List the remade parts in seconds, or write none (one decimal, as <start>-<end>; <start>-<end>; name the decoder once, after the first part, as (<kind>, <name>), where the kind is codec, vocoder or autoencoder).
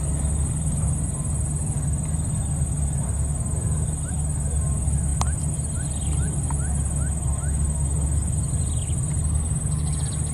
none